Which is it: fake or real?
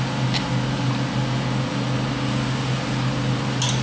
real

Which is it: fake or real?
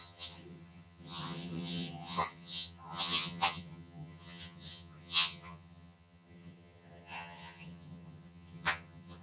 fake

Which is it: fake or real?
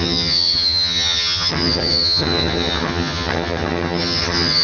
fake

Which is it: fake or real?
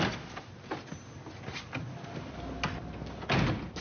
real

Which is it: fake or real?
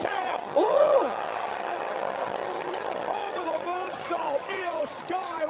fake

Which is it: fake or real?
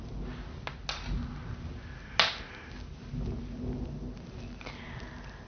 real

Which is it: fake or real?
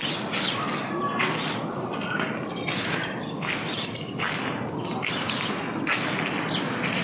real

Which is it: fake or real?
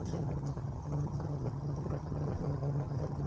fake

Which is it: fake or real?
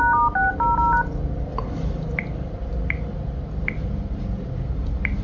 real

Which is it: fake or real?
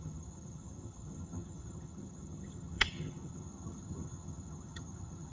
fake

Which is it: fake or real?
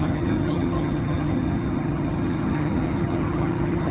fake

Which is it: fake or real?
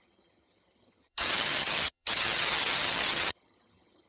fake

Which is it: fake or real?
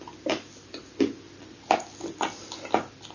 real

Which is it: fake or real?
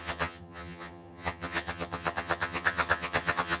fake